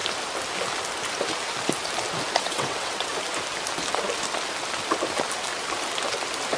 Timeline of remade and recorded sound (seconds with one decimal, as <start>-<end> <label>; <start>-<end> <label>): 0.0-2.4 recorded; 2.4-3.1 remade; 3.1-6.6 recorded